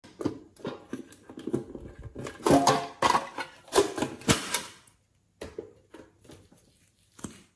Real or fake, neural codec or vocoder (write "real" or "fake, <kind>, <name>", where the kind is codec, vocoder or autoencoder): real